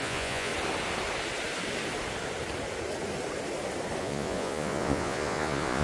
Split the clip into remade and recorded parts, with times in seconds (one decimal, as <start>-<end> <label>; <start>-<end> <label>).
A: 0.0-0.5 remade; 0.5-4.0 recorded; 4.0-5.8 remade